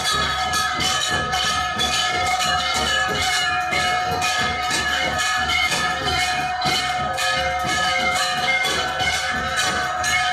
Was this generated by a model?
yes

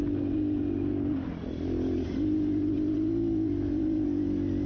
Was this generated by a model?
no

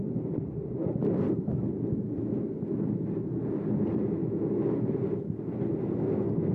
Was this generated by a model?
no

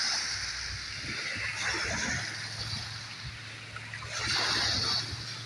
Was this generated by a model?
no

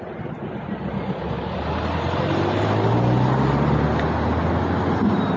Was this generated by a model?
no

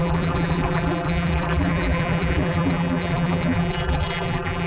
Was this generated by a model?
yes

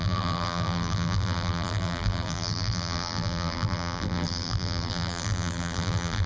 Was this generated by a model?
yes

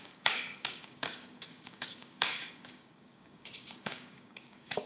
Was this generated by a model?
yes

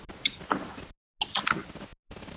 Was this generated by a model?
no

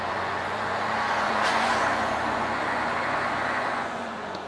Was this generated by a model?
yes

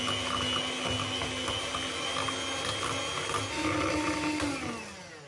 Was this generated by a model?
no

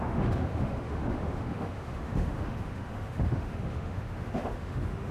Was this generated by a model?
yes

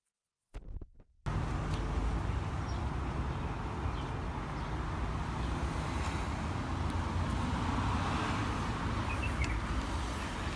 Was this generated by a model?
no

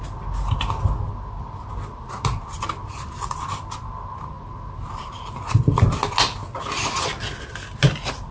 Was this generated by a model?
no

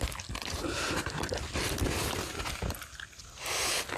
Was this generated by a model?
no